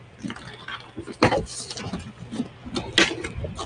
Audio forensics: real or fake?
real